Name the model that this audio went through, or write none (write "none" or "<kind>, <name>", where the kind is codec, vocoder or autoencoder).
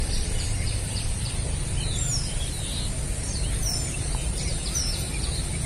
vocoder, BigVGAN v2